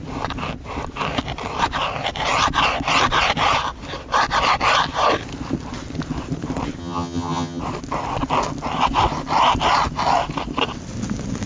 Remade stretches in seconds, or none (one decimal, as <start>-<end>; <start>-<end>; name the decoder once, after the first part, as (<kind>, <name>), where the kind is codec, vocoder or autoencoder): 6.8-7.6 (vocoder, HiFi-GAN)